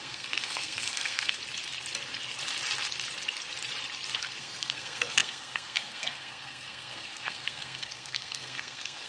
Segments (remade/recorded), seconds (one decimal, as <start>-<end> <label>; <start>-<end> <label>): 0.0-1.4 remade; 1.4-4.2 recorded; 4.2-9.1 remade